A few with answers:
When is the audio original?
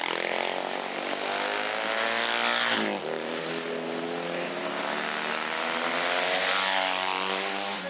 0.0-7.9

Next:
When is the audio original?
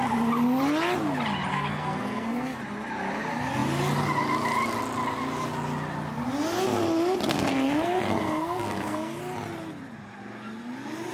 0.0-1.5; 2.6-7.3; 9.2-11.1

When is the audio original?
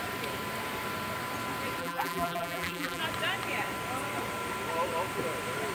0.0-1.8; 3.0-5.7